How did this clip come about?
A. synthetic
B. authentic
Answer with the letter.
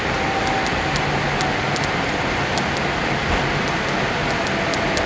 B